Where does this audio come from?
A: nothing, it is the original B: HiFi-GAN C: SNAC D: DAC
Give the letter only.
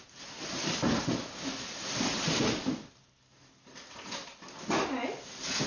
A